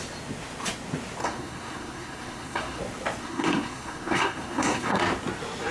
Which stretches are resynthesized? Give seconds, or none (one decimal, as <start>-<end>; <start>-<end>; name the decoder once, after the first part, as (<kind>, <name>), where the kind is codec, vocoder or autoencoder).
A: 1.2-2.8 (codec, SNAC); 3.2-5.0